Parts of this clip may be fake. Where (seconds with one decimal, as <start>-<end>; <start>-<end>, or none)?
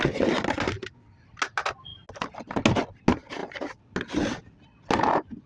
none